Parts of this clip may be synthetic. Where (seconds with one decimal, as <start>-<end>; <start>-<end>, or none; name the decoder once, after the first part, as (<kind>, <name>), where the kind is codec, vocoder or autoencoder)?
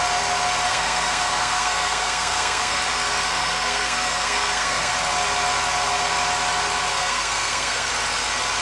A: 0.7-2.8 (codec, SNAC); 3.4-4.9; 6.9-7.9